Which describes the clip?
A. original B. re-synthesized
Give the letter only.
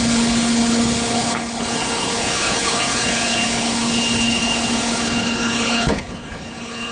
B